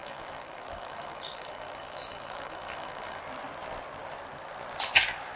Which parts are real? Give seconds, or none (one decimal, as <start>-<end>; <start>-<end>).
3.2-5.4